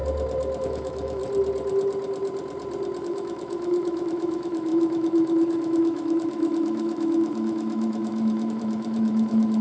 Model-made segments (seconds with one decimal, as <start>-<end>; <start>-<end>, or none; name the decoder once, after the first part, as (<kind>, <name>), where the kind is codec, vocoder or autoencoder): 0.6-1.2 (autoencoder, DAC-VAE); 3.0-9.6